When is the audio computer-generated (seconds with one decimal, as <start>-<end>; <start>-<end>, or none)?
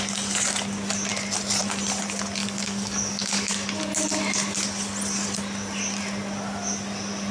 2.4-3.5